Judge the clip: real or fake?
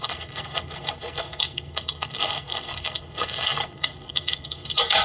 fake